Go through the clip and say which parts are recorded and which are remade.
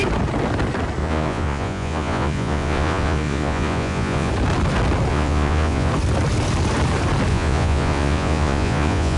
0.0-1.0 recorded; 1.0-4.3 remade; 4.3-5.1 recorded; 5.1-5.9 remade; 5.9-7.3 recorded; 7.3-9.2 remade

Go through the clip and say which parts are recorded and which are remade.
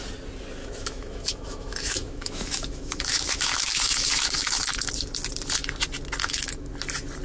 0.0-0.6 recorded; 0.6-4.9 remade; 4.9-6.2 recorded; 6.2-6.7 remade; 6.7-7.2 recorded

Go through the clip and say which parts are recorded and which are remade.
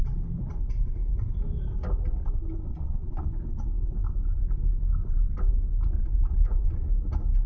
0.0-2.7 recorded; 2.7-3.3 remade; 3.3-7.5 recorded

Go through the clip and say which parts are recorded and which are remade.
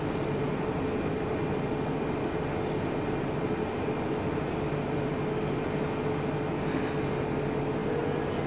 0.0-8.5 recorded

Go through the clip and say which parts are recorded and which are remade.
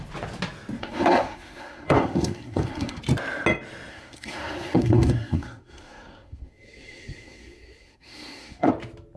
0.0-0.8 recorded; 0.8-3.0 remade; 3.0-3.9 recorded; 3.9-8.7 remade; 8.7-9.2 recorded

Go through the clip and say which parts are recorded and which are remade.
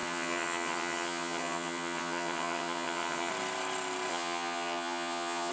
0.0-3.3 remade; 3.3-4.1 recorded; 4.1-5.5 remade